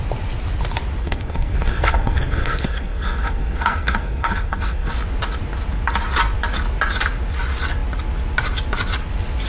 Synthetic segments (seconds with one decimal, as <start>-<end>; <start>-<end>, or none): 1.0-4.9